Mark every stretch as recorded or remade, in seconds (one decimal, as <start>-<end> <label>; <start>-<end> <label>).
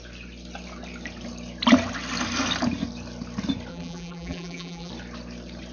0.0-3.7 recorded; 3.7-4.9 remade; 4.9-5.7 recorded